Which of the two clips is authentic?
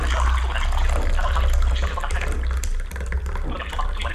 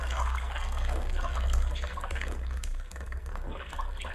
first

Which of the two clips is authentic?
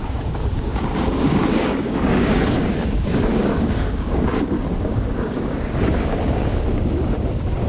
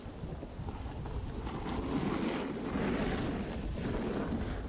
second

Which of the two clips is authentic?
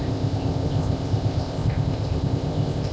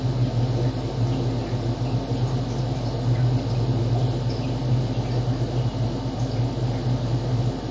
second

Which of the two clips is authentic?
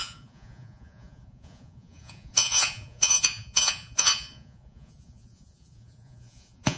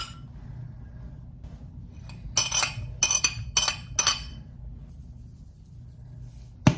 second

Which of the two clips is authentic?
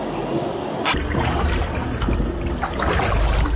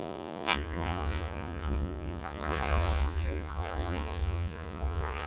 first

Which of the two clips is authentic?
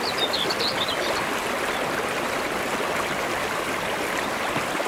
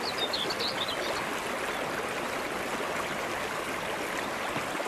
second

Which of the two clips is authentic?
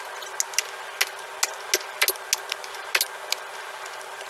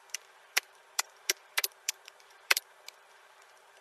first